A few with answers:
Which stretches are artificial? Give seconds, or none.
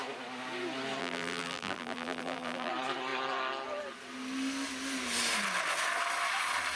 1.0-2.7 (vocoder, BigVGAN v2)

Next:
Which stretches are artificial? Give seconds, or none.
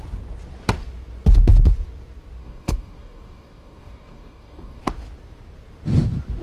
2.4-4.8 (codec, DAC)